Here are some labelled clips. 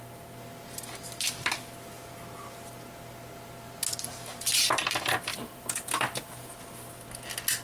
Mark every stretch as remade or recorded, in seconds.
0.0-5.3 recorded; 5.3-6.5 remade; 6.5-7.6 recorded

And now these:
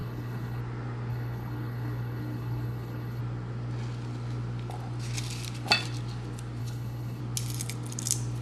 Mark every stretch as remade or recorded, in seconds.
0.0-0.6 remade; 0.6-1.1 recorded; 1.1-3.2 remade; 3.2-6.6 recorded; 6.6-7.2 remade; 7.2-8.4 recorded

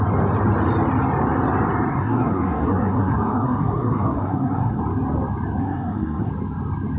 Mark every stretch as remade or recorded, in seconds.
0.0-1.9 recorded; 1.9-4.8 remade; 4.8-5.6 recorded; 5.6-6.3 remade; 6.3-7.0 recorded

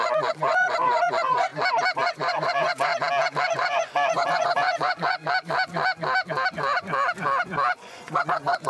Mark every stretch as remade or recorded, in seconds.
0.0-1.5 remade; 1.5-2.0 recorded; 2.0-2.9 remade; 2.9-3.5 recorded; 3.5-5.2 remade; 5.2-7.8 recorded; 7.8-8.7 remade

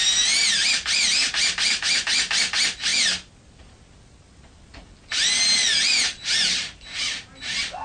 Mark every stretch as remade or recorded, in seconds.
0.0-7.8 recorded

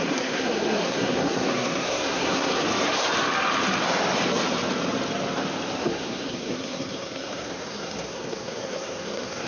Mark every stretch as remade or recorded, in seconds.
0.0-2.6 remade; 2.6-5.8 recorded; 5.8-9.5 remade

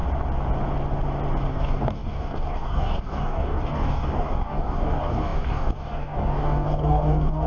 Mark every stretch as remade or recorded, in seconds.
0.0-1.5 recorded; 1.5-7.5 remade

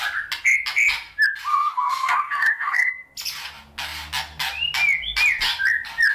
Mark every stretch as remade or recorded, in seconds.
0.0-1.5 recorded; 1.5-2.9 remade; 2.9-6.1 recorded